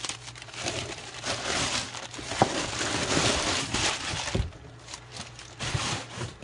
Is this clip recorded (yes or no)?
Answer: yes